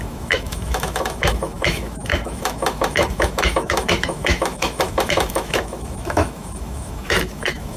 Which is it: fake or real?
fake